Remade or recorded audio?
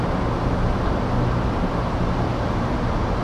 recorded